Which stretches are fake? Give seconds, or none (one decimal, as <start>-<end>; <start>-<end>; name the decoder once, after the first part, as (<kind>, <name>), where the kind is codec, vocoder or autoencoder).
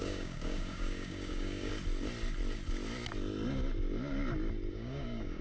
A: 0.0-1.7 (codec, DAC); 4.7-5.4